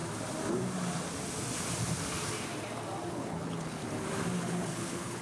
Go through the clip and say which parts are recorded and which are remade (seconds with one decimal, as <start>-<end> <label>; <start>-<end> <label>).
0.0-3.1 recorded; 3.1-3.8 remade; 3.8-4.4 recorded; 4.4-5.2 remade

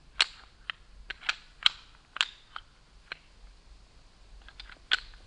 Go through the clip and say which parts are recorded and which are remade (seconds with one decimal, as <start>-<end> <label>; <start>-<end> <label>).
0.0-5.3 recorded